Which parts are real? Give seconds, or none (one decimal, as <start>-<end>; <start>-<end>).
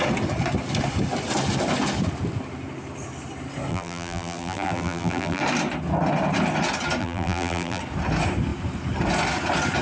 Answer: 0.0-3.7; 5.4-7.0; 7.8-9.8